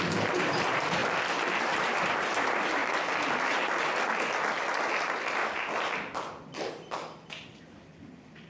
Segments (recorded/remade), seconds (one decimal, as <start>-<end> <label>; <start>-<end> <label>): 0.0-1.0 remade; 1.0-1.7 recorded; 1.7-2.8 remade; 2.8-7.6 recorded; 7.6-8.5 remade

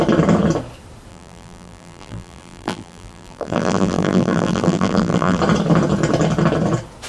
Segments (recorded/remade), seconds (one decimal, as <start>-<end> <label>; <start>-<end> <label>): 0.0-1.1 recorded; 1.1-5.4 remade; 5.4-7.1 recorded

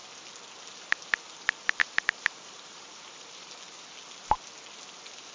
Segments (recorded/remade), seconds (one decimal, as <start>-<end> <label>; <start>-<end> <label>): 0.0-1.8 recorded; 1.8-3.5 remade; 3.5-5.3 recorded

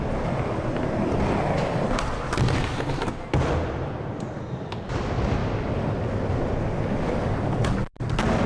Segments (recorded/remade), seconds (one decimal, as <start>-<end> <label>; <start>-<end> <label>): 0.0-8.5 recorded

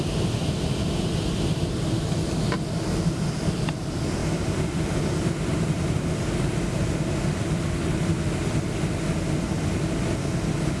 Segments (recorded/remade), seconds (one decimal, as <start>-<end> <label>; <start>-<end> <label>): 0.0-4.2 recorded; 4.2-6.2 remade; 6.2-10.8 recorded